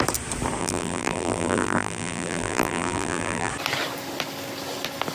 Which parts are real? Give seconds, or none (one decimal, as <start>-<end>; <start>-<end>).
0.0-0.6; 3.5-5.1